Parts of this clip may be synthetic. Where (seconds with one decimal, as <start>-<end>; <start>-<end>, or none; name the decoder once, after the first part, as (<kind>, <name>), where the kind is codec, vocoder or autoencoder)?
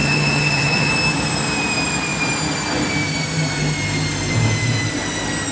0.0-0.9 (vocoder, HiFi-GAN)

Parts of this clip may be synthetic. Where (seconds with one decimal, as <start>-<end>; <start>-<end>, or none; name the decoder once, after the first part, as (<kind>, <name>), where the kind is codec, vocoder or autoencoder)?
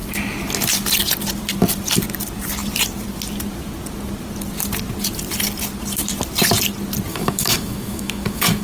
7.1-8.6 (autoencoder, DAC-VAE)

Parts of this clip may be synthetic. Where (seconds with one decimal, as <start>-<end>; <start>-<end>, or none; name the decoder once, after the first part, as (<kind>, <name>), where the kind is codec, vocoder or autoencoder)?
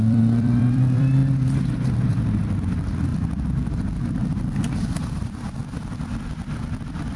0.0-3.1 (vocoder, BigVGAN v2); 5.0-7.2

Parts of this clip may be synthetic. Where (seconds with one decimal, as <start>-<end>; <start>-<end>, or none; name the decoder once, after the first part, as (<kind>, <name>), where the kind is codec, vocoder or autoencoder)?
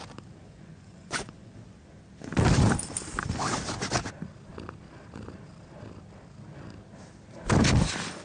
0.4-1.8 (vocoder, Vocos)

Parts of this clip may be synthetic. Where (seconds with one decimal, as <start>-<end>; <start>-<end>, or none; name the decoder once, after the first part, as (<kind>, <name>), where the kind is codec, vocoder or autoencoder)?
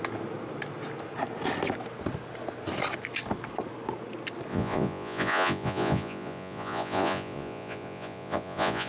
4.5-8.9 (vocoder, Vocos)